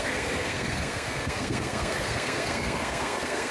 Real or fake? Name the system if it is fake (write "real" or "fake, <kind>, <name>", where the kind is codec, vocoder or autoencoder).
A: fake, codec, SNAC